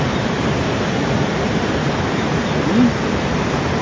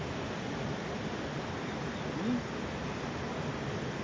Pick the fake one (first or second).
first